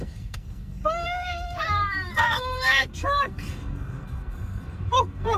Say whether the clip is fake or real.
fake